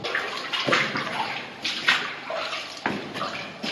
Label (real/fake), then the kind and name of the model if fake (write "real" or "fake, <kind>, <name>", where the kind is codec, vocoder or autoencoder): real